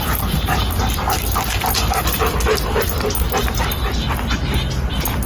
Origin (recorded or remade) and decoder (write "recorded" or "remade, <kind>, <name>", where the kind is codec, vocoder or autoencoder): recorded